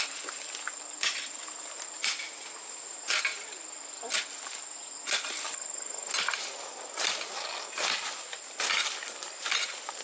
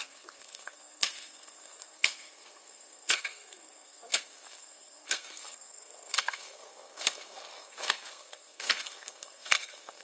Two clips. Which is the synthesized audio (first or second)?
second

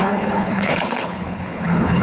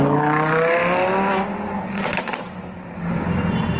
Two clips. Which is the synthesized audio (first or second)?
first